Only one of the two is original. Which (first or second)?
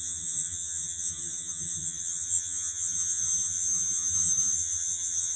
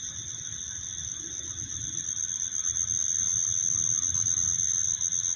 second